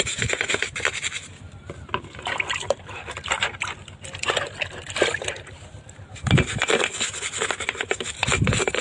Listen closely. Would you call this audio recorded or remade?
recorded